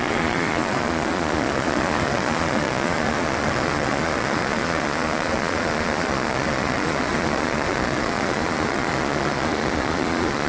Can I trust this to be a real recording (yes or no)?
no